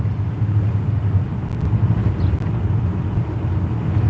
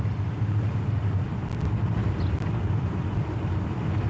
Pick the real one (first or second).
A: first